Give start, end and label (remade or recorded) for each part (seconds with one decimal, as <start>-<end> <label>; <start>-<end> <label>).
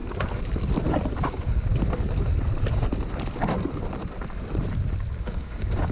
0.0-1.2 recorded; 1.2-1.7 remade; 1.7-5.2 recorded; 5.2-5.9 remade